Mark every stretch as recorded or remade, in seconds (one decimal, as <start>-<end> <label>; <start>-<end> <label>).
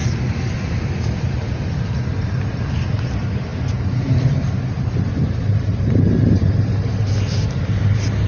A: 0.0-8.3 recorded